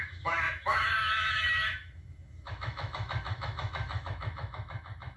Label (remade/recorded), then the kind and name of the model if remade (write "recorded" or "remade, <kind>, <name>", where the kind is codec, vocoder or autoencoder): remade, autoencoder, DAC-VAE